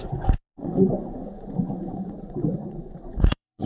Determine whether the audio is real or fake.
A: fake